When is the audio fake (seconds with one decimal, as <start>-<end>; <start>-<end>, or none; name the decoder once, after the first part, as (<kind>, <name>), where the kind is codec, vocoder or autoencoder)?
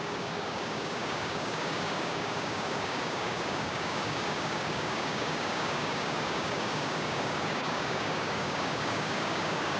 0.0-9.8 (codec, DAC)